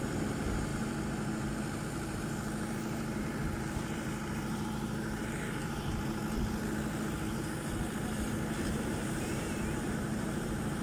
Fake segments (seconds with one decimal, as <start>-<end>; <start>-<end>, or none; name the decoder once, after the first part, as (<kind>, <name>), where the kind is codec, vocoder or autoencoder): 0.0-6.2 (vocoder, BigVGAN v2); 8.7-10.8